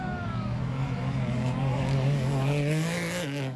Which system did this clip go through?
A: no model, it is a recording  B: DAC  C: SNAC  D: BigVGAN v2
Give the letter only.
B